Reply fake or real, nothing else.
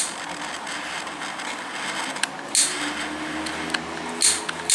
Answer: real